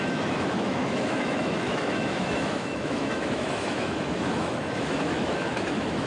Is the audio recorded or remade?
remade